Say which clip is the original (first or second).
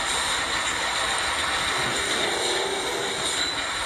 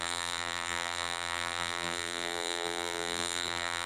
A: first